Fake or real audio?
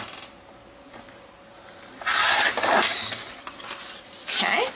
real